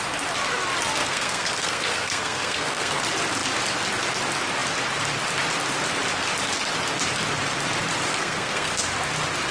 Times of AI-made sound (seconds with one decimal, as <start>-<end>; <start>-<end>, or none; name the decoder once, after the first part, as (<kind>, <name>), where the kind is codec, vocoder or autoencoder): 1.0-3.0 (codec, SNAC); 8.1-8.7